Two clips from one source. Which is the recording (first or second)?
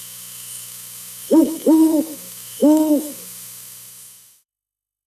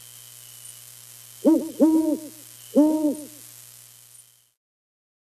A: second